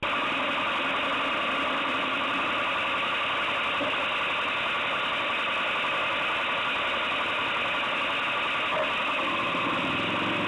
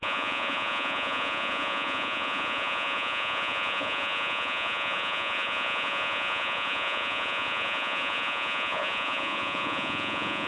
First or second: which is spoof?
second